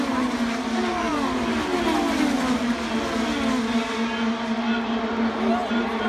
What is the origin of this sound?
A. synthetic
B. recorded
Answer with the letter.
B